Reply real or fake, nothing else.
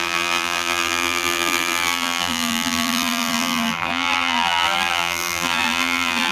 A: fake